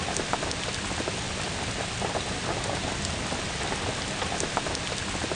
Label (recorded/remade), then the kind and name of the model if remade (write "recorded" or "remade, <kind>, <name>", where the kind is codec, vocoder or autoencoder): recorded